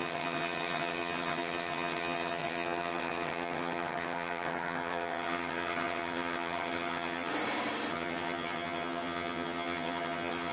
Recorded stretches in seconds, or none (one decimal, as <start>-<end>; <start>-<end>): 7.3-7.9